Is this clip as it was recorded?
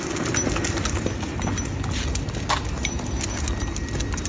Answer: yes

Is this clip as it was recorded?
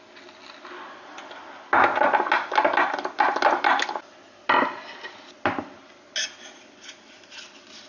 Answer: yes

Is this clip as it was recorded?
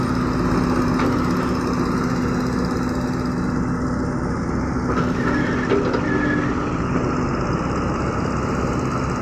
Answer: yes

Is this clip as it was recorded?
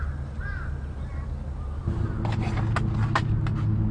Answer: yes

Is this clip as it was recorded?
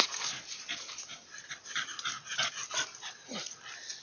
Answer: yes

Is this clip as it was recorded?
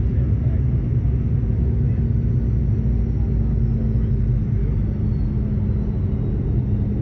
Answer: yes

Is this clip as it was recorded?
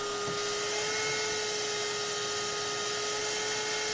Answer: yes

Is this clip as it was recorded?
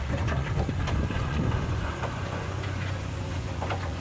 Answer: no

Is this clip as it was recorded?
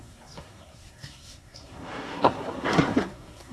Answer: no